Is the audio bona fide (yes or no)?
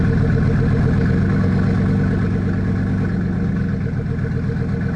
yes